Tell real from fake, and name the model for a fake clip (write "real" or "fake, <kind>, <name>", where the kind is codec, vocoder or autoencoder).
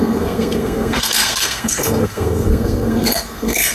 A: fake, codec, SNAC